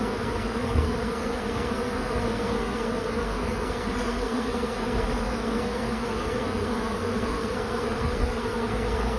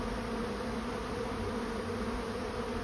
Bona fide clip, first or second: second